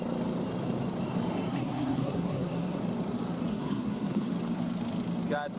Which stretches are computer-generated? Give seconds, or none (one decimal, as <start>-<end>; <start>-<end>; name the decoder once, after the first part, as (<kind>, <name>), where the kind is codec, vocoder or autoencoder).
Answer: 1.5-2.8 (codec, SNAC); 3.5-4.3

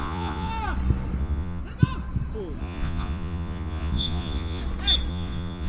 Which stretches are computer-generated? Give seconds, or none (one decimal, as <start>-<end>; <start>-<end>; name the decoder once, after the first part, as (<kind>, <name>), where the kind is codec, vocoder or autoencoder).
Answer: 0.0-0.5 (vocoder, Vocos); 1.2-1.6; 2.6-4.6; 5.1-5.7